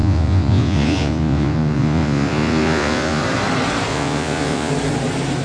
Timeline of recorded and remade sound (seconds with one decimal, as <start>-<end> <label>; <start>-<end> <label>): 0.0-3.2 remade; 3.2-3.9 recorded; 3.9-4.7 remade; 4.7-5.4 recorded